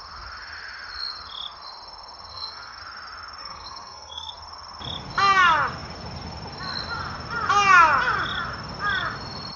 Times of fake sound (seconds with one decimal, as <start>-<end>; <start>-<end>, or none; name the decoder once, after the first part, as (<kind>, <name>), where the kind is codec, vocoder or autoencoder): 2.3-2.8 (codec, SNAC); 3.4-4.3